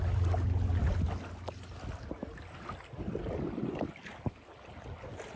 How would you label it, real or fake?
real